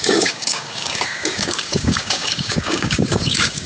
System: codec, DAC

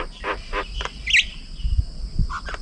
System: none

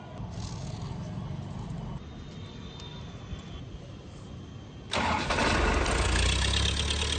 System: none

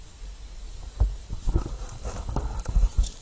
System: none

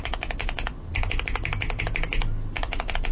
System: none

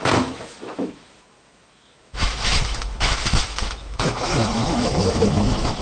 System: autoencoder, DAC-VAE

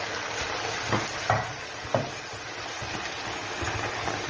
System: none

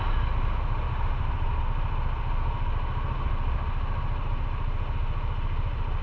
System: none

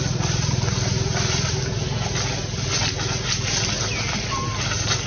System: none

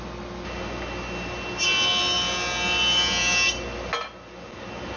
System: none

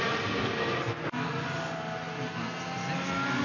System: none